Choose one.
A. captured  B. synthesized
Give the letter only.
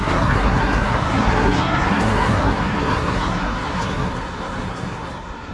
B